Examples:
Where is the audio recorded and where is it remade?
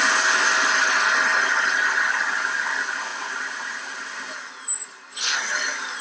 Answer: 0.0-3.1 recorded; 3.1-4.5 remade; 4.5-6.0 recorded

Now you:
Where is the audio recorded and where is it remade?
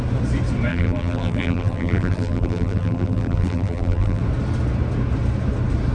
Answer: 0.0-0.7 recorded; 0.7-4.2 remade; 4.2-5.9 recorded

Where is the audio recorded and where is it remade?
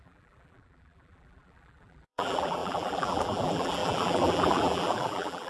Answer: 0.0-5.5 remade